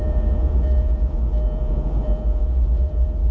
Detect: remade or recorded remade